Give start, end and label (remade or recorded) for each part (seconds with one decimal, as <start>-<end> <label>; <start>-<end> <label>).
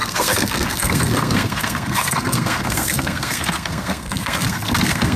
0.0-5.2 remade